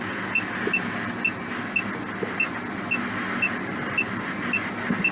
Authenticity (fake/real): real